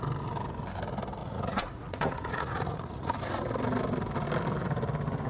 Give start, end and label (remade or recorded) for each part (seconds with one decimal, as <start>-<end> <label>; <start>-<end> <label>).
0.0-1.2 recorded; 1.2-3.2 remade; 3.2-5.3 recorded